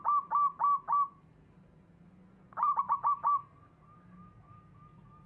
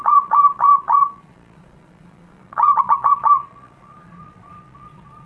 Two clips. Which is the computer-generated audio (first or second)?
second